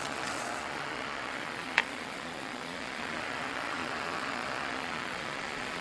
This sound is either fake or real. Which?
fake